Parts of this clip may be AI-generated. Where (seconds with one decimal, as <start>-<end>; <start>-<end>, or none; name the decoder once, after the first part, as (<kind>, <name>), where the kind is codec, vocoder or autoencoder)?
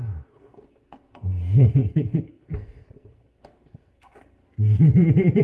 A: 0.0-4.4 (codec, SNAC)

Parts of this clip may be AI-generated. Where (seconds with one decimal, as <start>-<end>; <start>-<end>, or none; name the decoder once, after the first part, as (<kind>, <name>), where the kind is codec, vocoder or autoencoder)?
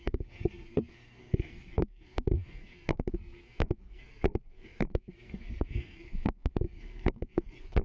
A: 0.0-7.8 (codec, SNAC)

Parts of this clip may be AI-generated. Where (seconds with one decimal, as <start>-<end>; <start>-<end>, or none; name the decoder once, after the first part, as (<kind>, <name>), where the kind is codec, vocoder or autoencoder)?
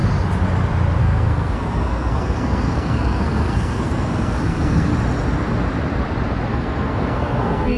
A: 1.0-4.9 (codec, SNAC); 6.5-7.8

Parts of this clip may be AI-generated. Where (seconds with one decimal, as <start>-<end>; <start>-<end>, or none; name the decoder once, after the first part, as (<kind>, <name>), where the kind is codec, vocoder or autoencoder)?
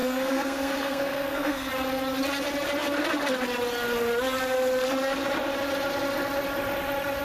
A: 0.0-1.7 (codec, SNAC)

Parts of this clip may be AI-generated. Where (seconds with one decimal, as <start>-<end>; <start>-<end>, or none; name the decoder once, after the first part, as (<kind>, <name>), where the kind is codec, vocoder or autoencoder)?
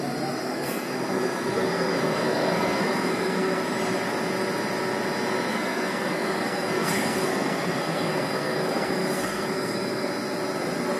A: 0.4-3.6 (codec, SNAC); 5.5-10.1